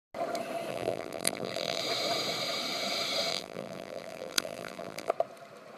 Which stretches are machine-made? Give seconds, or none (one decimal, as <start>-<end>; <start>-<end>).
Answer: 0.7-1.8; 3.3-5.1